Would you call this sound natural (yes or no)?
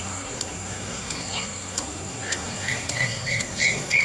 no